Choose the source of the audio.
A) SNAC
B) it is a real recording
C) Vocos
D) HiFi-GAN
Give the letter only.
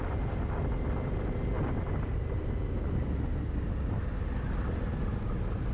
B